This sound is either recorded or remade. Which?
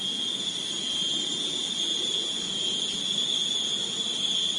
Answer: recorded